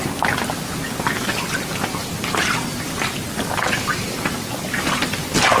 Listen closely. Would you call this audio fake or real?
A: real